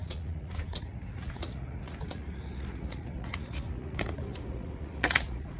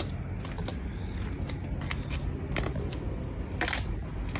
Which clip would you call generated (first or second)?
first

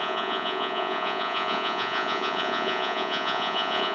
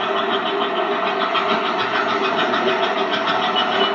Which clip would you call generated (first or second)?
first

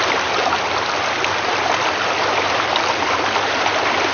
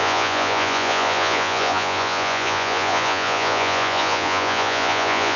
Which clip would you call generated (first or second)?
second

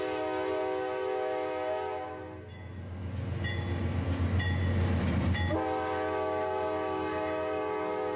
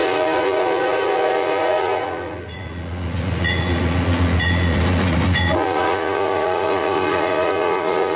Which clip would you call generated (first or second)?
second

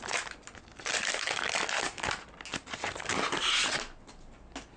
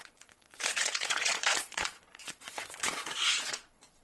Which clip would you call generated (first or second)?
second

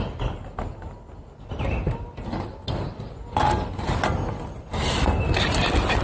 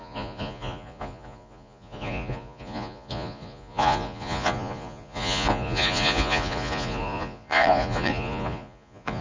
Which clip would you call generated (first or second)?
second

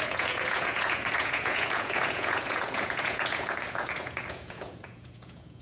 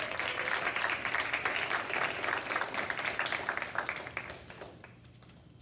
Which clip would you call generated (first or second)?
first